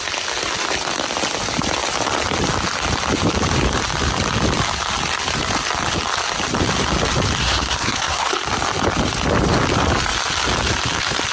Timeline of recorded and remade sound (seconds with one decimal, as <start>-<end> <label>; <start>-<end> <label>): 0.0-7.4 recorded; 7.4-8.3 remade; 8.3-11.3 recorded